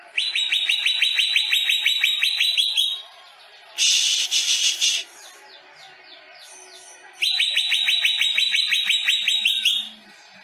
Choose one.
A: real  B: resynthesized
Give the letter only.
A